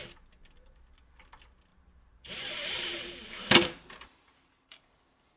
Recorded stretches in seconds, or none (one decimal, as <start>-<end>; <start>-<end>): 0.0-1.7; 4.9-5.4